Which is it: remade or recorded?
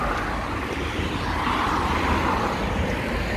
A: recorded